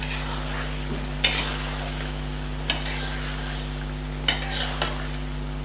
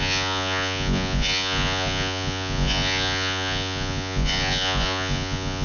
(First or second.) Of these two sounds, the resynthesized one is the second